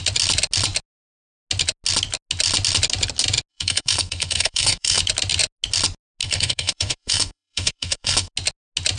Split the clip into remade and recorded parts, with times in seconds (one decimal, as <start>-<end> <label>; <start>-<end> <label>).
0.0-3.5 recorded; 3.5-5.0 remade; 5.0-6.2 recorded; 6.2-8.3 remade; 8.3-9.0 recorded